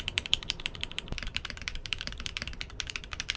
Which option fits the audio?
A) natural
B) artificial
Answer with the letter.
B